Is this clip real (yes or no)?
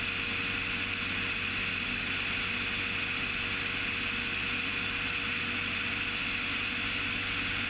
yes